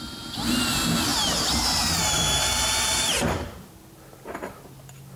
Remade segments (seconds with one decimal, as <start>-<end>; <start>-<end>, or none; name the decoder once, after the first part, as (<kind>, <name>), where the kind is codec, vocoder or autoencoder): 1.1-3.7 (vocoder, BigVGAN v2)